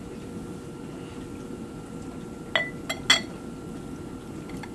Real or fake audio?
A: real